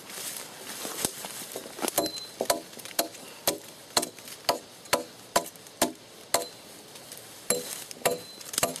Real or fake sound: real